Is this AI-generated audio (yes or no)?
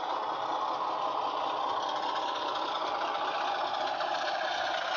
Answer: no